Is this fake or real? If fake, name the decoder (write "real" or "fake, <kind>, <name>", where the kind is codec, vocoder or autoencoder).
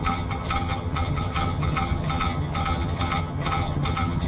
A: fake, vocoder, HiFi-GAN